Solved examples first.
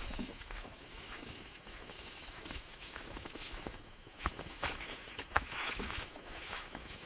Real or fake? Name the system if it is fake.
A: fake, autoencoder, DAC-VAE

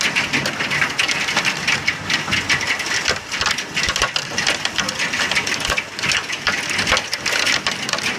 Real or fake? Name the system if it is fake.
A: real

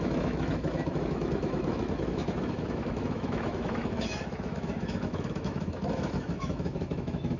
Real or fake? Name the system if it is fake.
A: fake, autoencoder, DAC-VAE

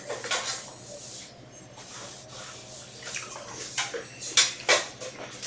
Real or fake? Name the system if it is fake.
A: real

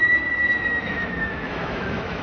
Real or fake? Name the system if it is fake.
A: fake, autoencoder, DAC-VAE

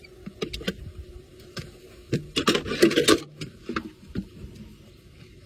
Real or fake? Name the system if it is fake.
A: real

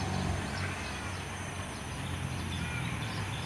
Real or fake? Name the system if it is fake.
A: real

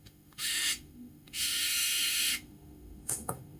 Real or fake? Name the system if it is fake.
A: fake, autoencoder, DAC-VAE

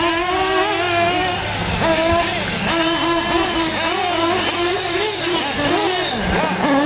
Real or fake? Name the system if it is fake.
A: real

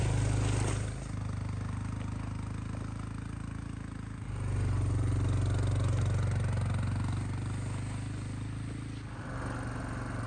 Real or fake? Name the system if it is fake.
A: real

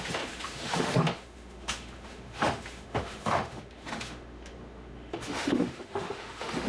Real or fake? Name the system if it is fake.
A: fake, autoencoder, DAC-VAE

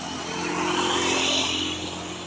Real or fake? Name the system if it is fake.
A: real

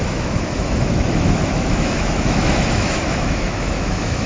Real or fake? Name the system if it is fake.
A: fake, autoencoder, DAC-VAE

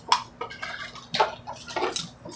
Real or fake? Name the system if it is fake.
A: real